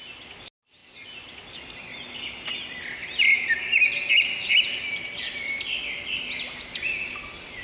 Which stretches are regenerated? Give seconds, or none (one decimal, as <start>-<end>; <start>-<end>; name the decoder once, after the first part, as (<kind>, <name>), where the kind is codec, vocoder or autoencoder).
none

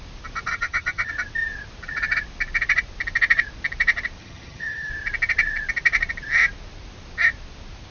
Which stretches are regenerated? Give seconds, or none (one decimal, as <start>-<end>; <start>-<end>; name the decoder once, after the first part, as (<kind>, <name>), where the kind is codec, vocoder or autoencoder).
0.5-1.1 (vocoder, HiFi-GAN); 4.2-4.9

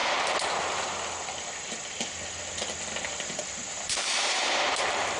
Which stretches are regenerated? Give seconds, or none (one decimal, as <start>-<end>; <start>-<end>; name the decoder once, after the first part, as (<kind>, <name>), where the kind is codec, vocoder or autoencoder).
3.7-5.2 (vocoder, BigVGAN v2)

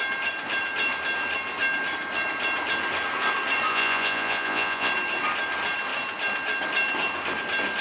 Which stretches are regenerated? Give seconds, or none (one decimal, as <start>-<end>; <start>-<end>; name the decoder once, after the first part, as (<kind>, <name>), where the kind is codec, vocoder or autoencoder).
3.7-4.9 (vocoder, Vocos)

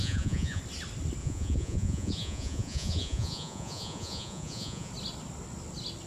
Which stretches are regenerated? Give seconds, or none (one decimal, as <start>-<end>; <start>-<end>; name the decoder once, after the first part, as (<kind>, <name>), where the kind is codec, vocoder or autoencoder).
0.0-0.6 (vocoder, Vocos); 1.2-4.9

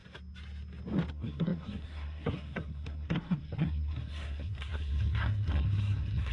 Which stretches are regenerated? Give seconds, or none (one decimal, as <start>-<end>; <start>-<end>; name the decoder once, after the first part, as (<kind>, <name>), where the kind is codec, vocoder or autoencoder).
1.1-6.3 (codec, SNAC)

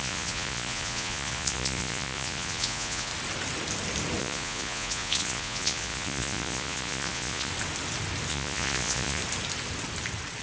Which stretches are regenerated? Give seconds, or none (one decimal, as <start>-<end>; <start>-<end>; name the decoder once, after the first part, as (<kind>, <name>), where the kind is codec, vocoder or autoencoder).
0.0-3.1 (vocoder, Vocos); 4.2-7.5; 8.3-9.2

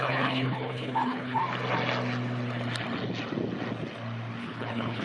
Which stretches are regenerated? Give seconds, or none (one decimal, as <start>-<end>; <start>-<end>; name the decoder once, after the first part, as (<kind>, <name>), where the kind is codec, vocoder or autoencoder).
0.0-1.4 (codec, HILCodec); 4.4-5.0